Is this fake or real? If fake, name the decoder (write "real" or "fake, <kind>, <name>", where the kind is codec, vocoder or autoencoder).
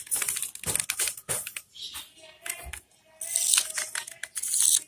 real